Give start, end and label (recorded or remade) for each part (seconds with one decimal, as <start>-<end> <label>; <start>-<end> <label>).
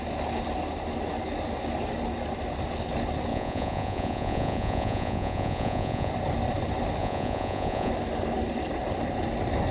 0.0-3.3 recorded; 3.3-6.1 remade; 6.1-7.0 recorded; 7.0-7.9 remade; 7.9-9.7 recorded